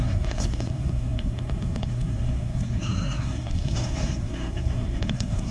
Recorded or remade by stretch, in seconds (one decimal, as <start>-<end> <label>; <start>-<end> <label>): 0.0-5.5 remade